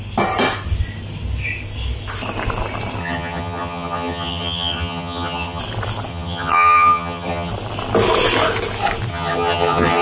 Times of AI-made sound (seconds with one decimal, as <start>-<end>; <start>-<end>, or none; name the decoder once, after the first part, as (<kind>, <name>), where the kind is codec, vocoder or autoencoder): 3.0-5.6 (vocoder, HiFi-GAN); 6.1-7.5; 9.1-10.0